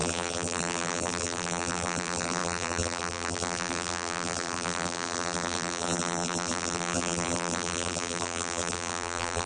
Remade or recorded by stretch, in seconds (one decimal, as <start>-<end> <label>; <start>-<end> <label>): 0.0-9.5 remade